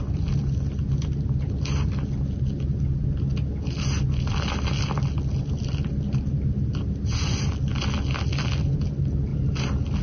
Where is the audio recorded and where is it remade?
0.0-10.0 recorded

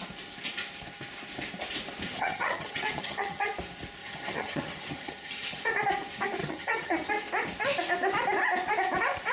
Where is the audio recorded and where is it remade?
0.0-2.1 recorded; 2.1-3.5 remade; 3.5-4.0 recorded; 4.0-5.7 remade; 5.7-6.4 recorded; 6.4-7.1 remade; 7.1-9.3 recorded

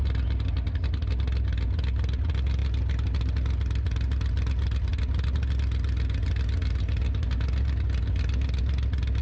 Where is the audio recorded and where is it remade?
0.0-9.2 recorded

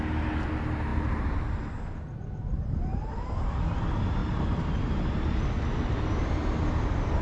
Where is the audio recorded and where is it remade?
0.0-7.2 recorded

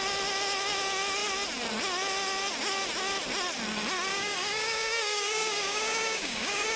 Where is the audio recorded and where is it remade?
0.0-4.1 recorded; 4.1-6.8 remade